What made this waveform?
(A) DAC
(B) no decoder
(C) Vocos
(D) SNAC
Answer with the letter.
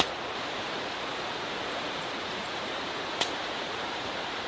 C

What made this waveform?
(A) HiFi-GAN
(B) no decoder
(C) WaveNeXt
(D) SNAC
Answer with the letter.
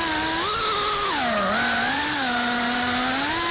B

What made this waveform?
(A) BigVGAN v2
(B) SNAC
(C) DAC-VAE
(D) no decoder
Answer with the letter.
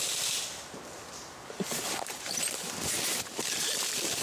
D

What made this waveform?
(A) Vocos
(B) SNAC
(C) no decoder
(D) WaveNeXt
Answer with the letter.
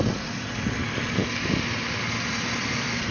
C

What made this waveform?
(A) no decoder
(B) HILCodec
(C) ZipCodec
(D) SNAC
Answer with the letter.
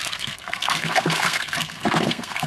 D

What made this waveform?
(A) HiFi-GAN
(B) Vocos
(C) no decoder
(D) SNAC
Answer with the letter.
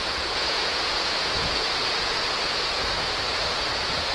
B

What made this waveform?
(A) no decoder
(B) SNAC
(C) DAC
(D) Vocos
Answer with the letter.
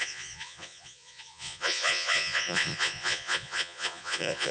D